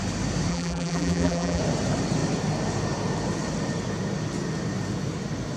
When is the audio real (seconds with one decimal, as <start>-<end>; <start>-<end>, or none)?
0.0-0.5; 1.6-5.6